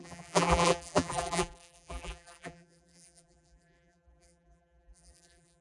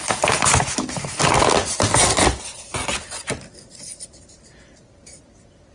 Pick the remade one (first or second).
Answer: first